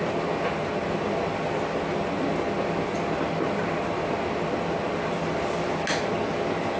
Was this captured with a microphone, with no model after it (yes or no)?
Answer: yes